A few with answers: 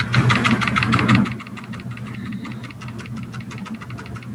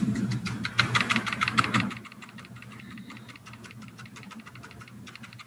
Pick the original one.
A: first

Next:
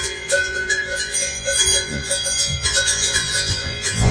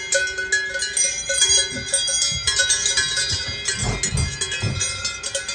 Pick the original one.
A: second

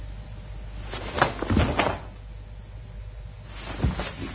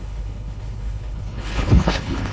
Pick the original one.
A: first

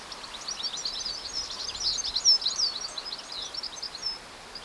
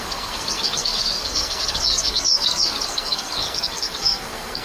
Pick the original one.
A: first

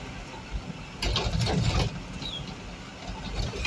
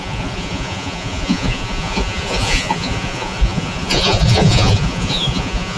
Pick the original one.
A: first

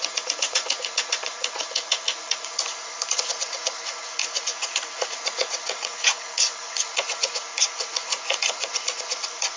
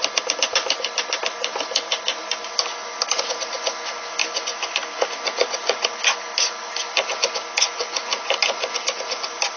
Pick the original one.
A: second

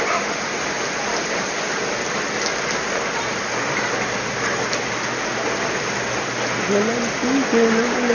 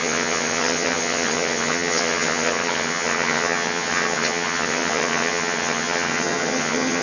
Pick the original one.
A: first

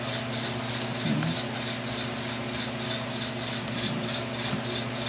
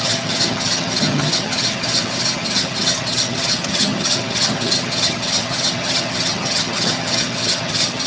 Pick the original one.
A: first